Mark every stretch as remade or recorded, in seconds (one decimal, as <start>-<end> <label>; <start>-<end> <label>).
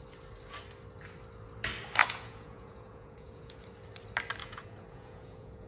0.0-2.0 recorded; 2.0-3.6 remade; 3.6-4.4 recorded; 4.4-5.7 remade